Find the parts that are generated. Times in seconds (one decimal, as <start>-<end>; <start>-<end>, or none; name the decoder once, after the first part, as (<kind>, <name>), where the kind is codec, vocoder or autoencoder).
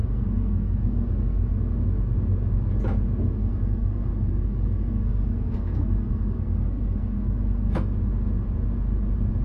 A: 0.0-1.6 (codec, SNAC); 3.4-7.8